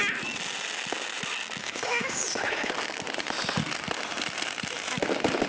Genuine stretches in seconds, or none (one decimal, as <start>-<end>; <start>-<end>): 0.0-1.6; 2.7-5.5